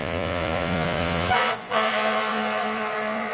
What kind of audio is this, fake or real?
fake